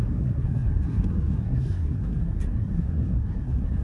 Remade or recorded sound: remade